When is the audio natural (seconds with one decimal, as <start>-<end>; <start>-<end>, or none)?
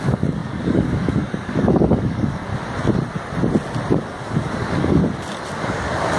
2.5-4.0; 5.0-5.6